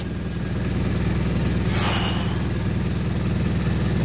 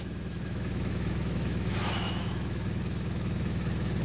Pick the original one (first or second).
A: first